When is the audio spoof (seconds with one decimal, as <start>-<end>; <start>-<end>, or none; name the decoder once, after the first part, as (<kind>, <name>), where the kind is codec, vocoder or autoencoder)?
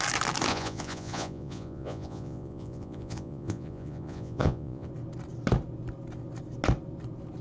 0.5-4.9 (vocoder, Vocos)